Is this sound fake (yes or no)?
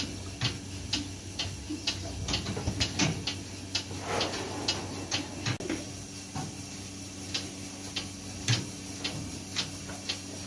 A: no